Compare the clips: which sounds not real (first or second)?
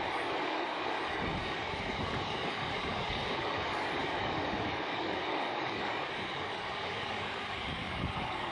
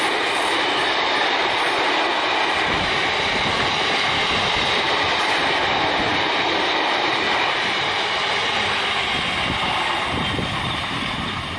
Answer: first